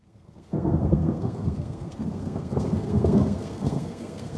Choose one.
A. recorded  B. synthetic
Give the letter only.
B